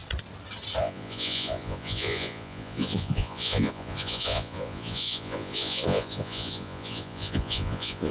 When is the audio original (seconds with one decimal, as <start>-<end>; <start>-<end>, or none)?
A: 0.0-0.8